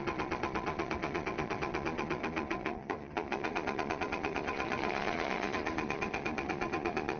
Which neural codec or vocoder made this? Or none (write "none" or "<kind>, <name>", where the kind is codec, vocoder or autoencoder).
vocoder, Vocos